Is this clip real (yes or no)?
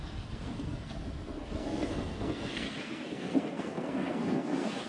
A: no